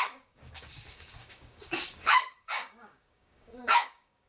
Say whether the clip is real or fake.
fake